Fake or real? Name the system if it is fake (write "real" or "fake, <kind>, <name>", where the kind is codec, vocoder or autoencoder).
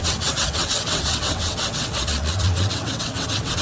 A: fake, vocoder, WaveNeXt